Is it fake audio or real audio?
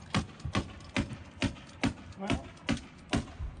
real